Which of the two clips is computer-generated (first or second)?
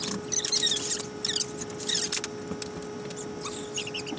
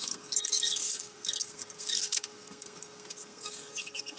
second